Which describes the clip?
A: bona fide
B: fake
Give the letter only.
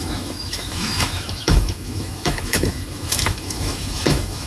B